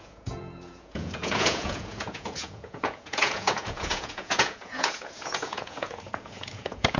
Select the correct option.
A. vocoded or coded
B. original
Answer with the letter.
A